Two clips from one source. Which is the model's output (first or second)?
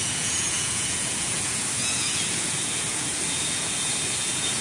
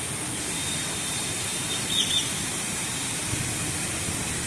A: first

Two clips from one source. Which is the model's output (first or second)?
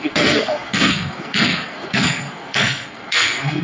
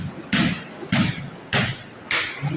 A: first